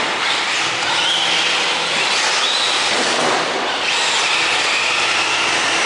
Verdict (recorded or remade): recorded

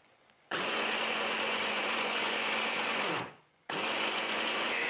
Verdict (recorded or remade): remade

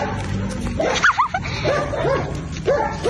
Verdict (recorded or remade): recorded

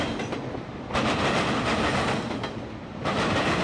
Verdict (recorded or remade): recorded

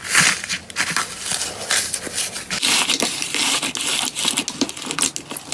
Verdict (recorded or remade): recorded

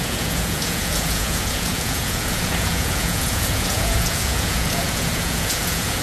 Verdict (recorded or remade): remade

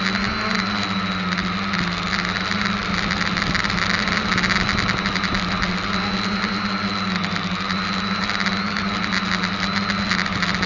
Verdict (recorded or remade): recorded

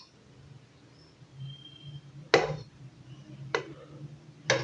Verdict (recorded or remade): recorded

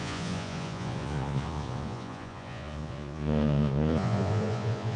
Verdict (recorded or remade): remade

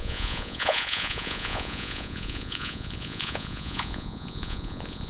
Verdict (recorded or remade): remade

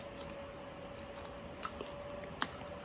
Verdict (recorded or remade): recorded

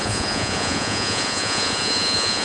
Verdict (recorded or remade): remade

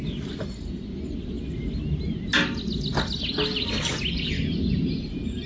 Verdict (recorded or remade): recorded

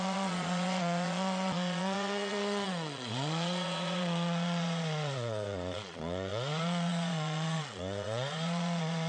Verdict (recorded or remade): remade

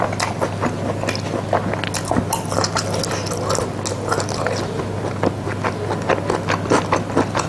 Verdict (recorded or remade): recorded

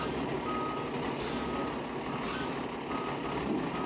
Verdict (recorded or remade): recorded